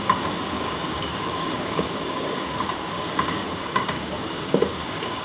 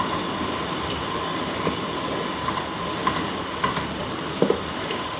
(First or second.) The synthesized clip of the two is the first